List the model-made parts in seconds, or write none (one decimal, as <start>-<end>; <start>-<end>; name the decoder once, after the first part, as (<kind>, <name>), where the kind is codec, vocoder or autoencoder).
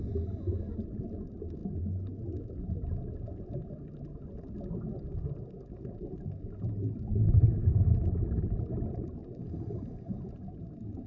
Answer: 7.6-8.6 (autoencoder, DAC-VAE)